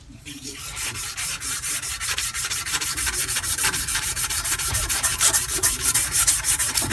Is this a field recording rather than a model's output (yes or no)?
no